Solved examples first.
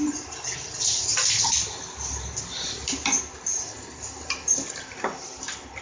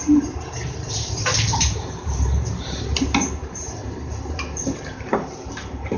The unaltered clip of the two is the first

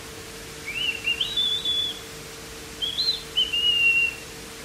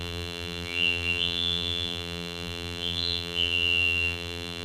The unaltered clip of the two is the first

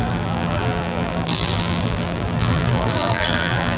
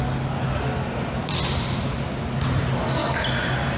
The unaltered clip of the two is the second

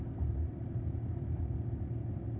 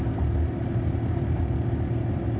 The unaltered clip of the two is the second